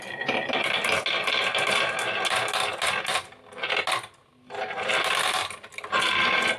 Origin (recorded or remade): recorded